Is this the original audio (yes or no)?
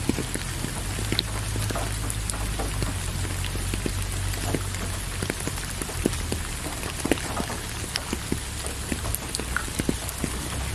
yes